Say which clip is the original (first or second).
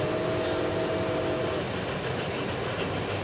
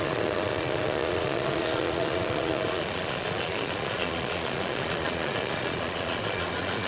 first